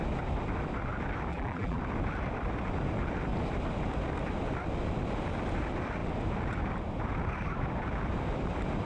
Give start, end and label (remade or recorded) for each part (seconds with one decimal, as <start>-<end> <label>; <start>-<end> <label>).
0.0-1.3 recorded; 1.3-1.8 remade; 1.8-8.9 recorded